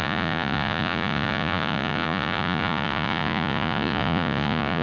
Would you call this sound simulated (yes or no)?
yes